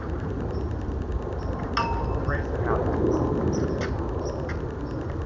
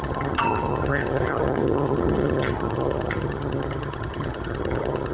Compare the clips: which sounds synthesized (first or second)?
second